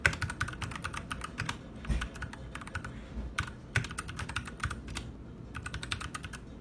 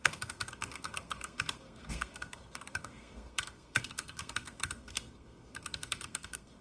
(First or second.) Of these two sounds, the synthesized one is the second